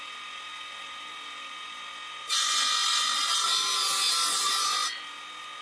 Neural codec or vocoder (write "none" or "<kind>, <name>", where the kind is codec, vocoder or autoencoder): none